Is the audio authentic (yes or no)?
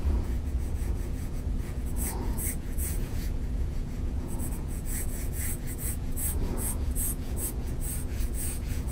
no